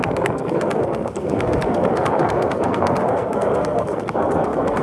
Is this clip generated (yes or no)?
yes